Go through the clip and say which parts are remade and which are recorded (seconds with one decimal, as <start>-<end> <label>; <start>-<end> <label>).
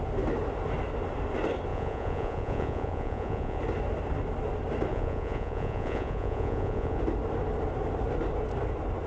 0.0-1.7 recorded; 1.7-3.6 remade; 3.6-4.9 recorded; 4.9-7.0 remade; 7.0-9.1 recorded